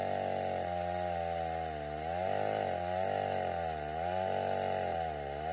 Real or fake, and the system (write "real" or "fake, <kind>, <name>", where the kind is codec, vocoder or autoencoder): real